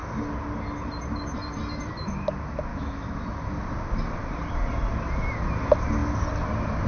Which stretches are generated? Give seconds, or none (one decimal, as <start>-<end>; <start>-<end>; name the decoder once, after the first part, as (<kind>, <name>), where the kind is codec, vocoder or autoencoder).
2.7-3.2 (autoencoder, DAC-VAE)